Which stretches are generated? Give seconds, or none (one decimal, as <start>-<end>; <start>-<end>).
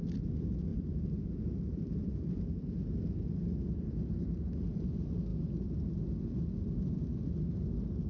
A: 0.7-2.6